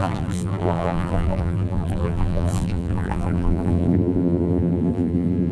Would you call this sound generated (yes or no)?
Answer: yes